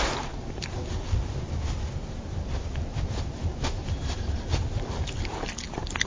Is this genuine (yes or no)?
yes